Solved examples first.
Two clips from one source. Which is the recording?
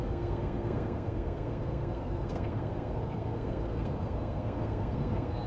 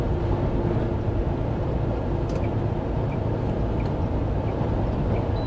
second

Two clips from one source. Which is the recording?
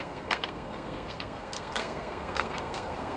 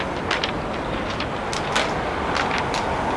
second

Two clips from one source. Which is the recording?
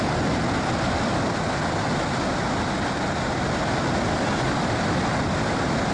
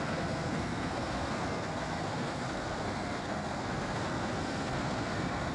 first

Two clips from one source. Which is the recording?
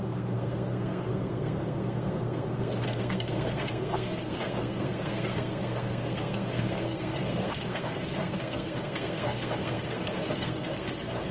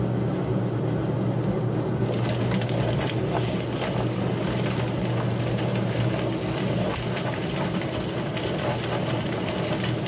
second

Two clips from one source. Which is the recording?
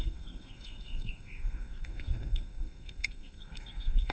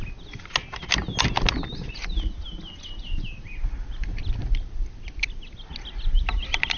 second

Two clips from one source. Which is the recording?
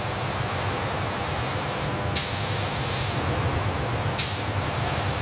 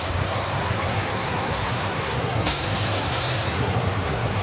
first